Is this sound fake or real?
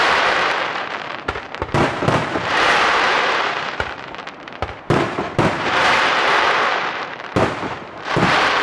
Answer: fake